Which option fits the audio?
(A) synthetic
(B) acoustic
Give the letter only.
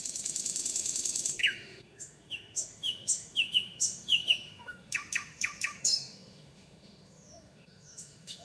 A